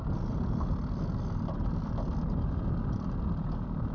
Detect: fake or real real